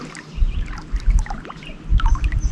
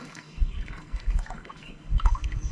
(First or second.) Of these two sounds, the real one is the first